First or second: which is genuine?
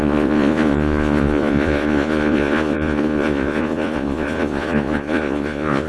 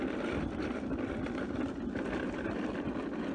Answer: second